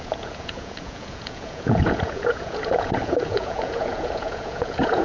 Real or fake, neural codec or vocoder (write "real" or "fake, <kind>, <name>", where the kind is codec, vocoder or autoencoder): fake, vocoder, Vocos